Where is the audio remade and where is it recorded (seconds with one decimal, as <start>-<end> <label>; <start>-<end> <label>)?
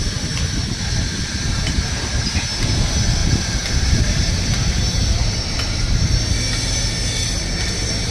0.0-3.2 recorded; 3.2-5.9 remade; 5.9-8.1 recorded